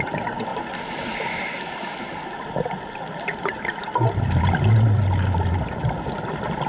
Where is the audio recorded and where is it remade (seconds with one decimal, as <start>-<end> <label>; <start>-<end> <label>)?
0.0-6.7 recorded